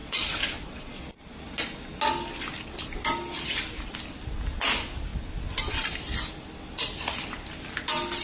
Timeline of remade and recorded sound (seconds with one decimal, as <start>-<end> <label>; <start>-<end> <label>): 0.0-1.0 remade; 1.0-8.2 recorded